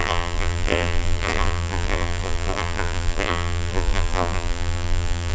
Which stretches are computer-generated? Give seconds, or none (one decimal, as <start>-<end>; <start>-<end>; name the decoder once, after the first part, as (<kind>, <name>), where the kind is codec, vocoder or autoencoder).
0.0-5.3 (vocoder, BigVGAN v2)